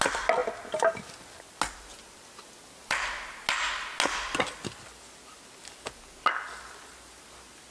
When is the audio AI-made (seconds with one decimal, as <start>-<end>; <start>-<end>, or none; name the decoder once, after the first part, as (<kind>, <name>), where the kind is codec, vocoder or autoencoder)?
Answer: none